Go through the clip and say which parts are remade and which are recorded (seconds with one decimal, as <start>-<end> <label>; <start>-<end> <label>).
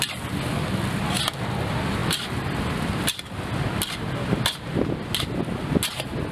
0.0-6.3 recorded